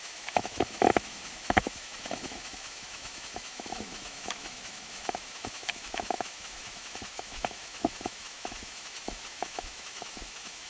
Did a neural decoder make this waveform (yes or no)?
yes